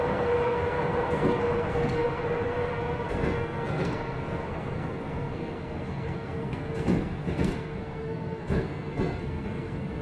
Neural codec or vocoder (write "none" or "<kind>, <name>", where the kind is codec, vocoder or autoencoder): codec, SNAC